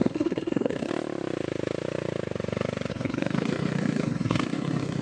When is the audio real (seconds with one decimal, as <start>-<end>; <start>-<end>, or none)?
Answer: 0.9-2.9